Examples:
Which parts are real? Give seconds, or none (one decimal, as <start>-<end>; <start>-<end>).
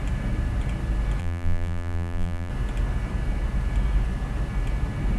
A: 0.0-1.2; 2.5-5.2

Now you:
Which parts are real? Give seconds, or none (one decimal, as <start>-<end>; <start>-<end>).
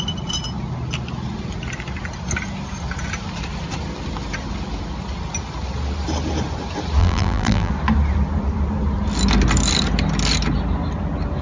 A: 0.0-7.0; 7.7-11.4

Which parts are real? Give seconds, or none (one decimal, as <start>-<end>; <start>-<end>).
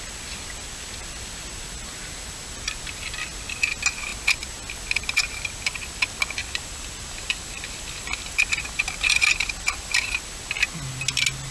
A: 0.0-6.4; 10.1-11.5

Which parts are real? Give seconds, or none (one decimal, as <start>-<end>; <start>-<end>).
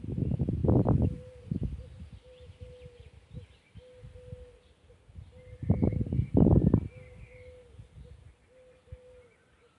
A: 0.0-9.8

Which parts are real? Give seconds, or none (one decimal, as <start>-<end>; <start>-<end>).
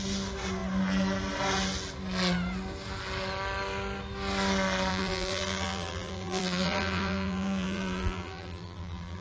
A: 0.0-4.9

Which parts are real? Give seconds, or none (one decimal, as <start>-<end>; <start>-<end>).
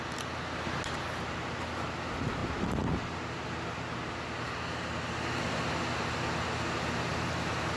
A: 0.0-7.1